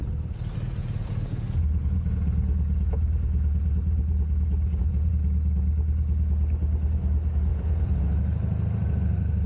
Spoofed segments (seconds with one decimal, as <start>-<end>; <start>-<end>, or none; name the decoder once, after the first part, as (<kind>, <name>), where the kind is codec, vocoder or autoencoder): 0.8-5.1 (vocoder, Vocos); 7.5-8.0